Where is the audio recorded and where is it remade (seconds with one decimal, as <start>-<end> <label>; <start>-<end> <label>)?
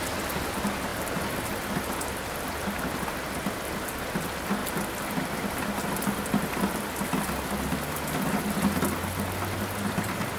0.0-10.4 recorded